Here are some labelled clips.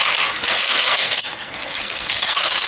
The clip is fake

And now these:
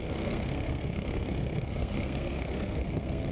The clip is fake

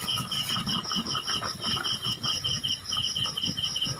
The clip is real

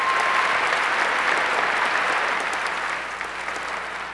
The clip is real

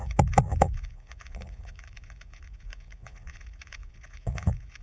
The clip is fake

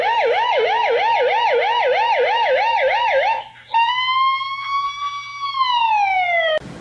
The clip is real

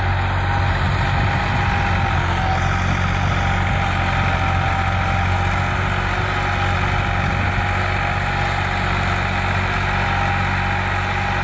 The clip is real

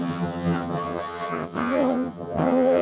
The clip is fake